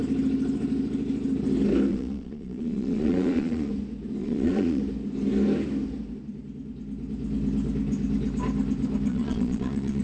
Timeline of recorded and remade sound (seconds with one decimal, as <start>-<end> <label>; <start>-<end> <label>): 0.0-1.9 recorded; 1.9-3.7 remade; 3.7-4.2 recorded; 4.2-4.8 remade; 4.8-9.1 recorded; 9.1-10.0 remade